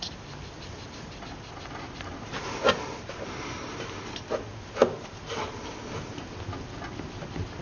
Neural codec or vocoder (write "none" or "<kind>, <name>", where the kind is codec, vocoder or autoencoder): none